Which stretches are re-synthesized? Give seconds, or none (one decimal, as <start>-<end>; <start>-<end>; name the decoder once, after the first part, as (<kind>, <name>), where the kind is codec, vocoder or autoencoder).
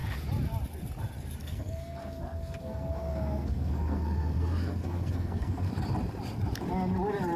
1.4-5.7 (codec, SNAC)